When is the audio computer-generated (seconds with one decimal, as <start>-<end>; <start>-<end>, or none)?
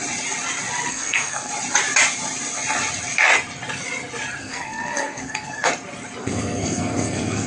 0.9-1.5; 4.4-5.7; 6.2-7.5